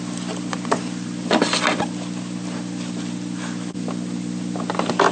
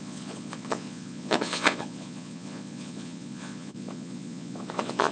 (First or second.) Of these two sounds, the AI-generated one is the second